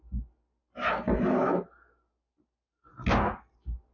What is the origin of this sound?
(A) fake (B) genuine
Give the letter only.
B